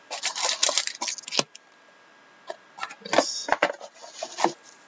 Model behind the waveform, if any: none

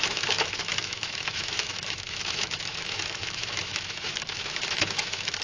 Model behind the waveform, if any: autoencoder, DAC-VAE